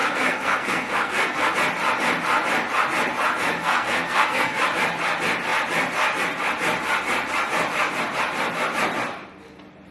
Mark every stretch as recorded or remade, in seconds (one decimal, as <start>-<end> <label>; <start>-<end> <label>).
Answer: 0.0-1.5 remade; 1.5-3.6 recorded; 3.6-4.6 remade; 4.6-9.9 recorded